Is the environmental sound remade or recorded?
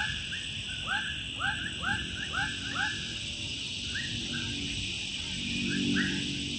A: recorded